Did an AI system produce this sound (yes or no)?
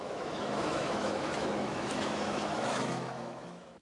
yes